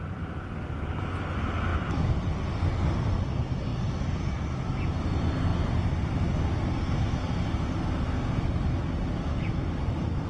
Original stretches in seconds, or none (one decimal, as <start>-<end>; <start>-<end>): 0.0-1.7; 2.3-3.7; 4.2-10.3